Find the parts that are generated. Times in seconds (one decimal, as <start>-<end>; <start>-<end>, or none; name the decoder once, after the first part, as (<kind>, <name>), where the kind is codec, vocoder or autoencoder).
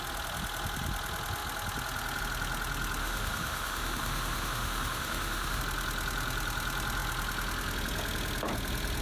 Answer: 3.0-5.6 (autoencoder, DAC-VAE)